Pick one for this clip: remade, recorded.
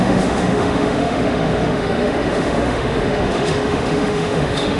remade